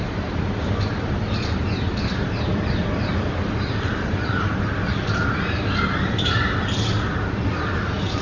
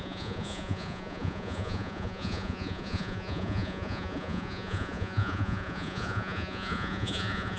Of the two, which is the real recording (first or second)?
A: first